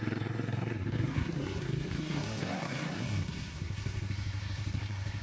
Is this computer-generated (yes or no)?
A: yes